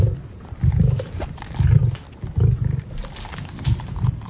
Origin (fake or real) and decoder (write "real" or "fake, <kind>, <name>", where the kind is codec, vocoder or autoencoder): real